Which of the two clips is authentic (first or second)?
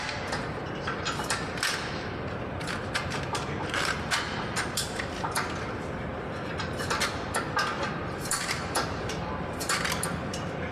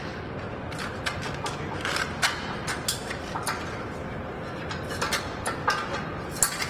second